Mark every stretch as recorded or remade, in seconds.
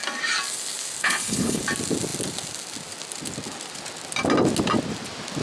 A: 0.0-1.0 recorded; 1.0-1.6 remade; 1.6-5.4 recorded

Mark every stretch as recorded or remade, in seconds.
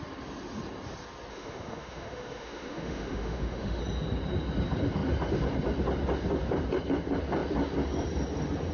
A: 0.0-1.3 recorded; 1.3-3.8 remade; 3.8-8.7 recorded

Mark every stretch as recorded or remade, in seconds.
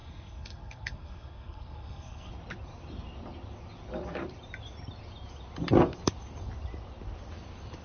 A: 0.0-2.3 remade; 2.3-7.8 recorded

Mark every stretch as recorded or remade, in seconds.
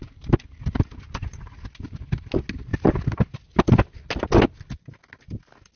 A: 0.0-5.8 recorded